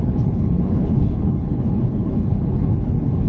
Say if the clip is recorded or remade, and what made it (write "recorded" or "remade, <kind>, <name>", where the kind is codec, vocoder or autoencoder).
remade, codec, HILCodec